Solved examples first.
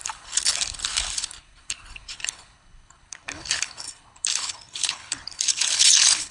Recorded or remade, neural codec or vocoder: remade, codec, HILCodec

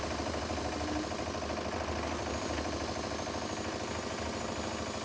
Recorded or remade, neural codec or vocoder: recorded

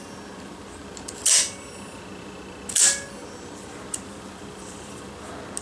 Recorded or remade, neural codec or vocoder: recorded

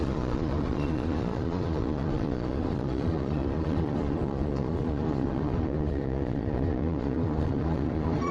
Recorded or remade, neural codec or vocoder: remade, vocoder, Vocos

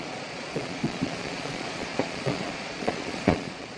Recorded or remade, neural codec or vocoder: remade, vocoder, Vocos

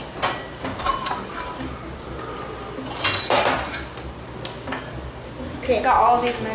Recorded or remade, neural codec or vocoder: recorded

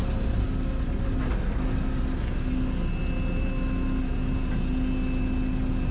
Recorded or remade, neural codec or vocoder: recorded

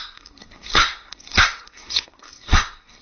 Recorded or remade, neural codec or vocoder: remade, codec, SNAC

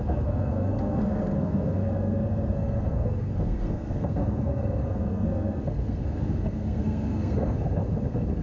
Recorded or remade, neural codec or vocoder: remade, codec, SNAC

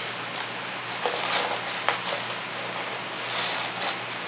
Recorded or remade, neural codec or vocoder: recorded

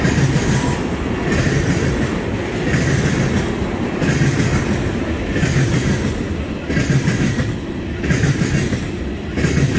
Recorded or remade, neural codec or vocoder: recorded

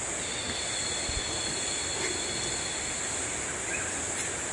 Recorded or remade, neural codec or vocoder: recorded